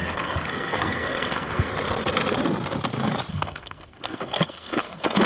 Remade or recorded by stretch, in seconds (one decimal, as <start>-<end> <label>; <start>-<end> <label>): 0.0-1.7 remade; 1.7-3.3 recorded; 3.3-5.3 remade